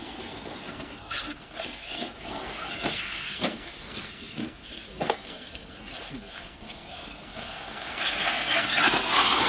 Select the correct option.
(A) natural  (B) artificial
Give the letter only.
B